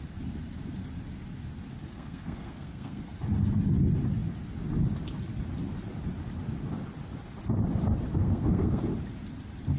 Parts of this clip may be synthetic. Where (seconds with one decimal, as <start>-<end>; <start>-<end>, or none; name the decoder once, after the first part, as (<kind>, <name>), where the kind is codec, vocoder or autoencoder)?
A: 1.8-3.0 (codec, SNAC); 8.2-8.8